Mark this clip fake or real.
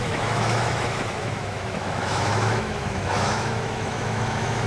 fake